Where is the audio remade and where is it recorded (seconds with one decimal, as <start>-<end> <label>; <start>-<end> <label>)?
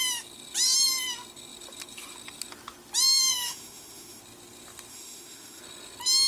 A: 0.0-3.3 recorded; 3.3-4.2 remade; 4.2-4.9 recorded; 4.9-5.6 remade; 5.6-6.3 recorded